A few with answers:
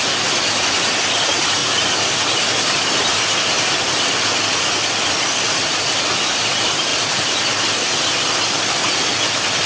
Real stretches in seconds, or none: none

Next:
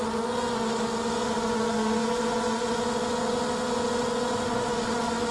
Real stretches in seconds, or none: 0.0-5.3

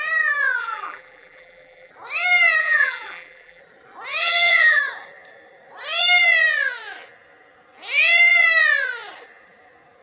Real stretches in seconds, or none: 0.0-0.6; 1.9-2.6; 3.6-4.2; 4.8-10.0

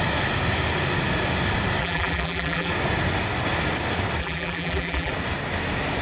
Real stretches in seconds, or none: 0.0-1.8; 2.7-4.2; 5.1-6.0